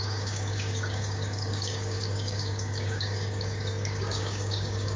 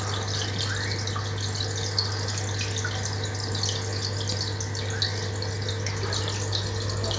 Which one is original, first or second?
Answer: second